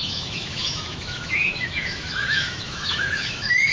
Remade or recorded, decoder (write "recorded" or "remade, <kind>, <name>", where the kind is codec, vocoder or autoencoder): remade, autoencoder, DAC-VAE